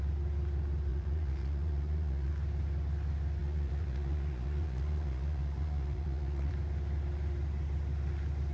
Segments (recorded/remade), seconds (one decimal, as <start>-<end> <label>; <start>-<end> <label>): 0.0-0.9 recorded; 0.9-2.3 remade; 2.3-3.4 recorded; 3.4-6.5 remade; 6.5-8.5 recorded